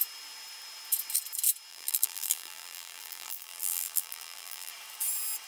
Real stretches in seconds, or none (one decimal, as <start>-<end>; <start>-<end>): 0.0-1.7; 4.7-5.5